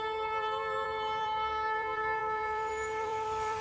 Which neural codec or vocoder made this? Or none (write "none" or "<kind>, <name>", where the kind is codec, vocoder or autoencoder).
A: vocoder, BigVGAN v2